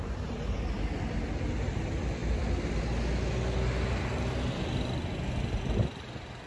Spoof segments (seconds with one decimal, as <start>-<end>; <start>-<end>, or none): none